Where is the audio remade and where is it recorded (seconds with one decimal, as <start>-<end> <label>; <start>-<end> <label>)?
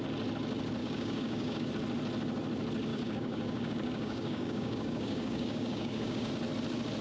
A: 0.0-0.8 recorded; 0.8-1.7 remade; 1.7-2.9 recorded; 2.9-6.3 remade; 6.3-7.0 recorded